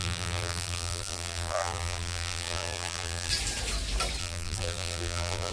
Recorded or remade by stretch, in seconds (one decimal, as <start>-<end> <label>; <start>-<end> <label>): 0.0-3.3 remade; 3.3-4.2 recorded; 4.2-5.5 remade